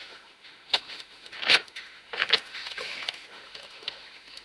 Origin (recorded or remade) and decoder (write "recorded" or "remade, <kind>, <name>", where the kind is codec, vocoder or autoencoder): remade, autoencoder, DAC-VAE